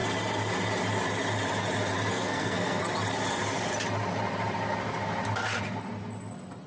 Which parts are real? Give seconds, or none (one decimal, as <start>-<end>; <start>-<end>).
0.0-2.1; 2.8-6.7